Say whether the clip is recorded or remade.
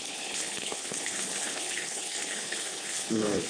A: remade